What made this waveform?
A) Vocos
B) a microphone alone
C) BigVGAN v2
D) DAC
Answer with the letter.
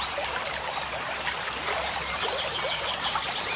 B